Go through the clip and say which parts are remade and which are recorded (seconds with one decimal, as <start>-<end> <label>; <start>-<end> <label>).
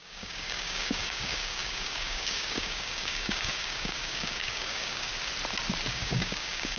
0.0-5.1 remade; 5.1-5.9 recorded; 5.9-6.8 remade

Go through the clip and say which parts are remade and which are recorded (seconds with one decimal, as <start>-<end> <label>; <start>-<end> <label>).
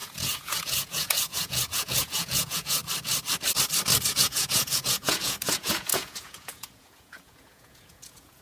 0.0-2.8 remade; 2.8-4.1 recorded; 4.1-8.4 remade